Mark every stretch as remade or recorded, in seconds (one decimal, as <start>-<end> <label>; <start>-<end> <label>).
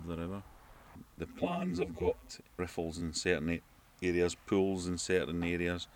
0.0-1.3 recorded; 1.3-2.3 remade; 2.3-6.0 recorded